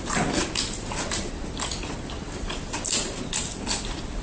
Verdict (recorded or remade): recorded